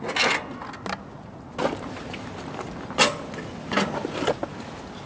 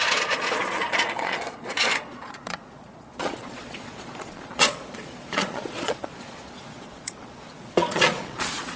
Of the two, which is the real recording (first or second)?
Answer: first